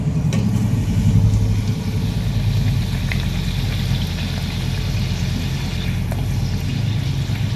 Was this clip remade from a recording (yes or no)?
no